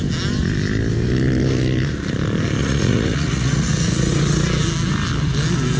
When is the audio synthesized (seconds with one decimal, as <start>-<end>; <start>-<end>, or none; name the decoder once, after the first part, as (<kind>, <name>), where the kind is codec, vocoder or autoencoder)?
2.6-4.1 (vocoder, Vocos)